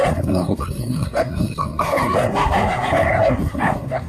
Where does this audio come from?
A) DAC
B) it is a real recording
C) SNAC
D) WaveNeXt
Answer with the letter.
C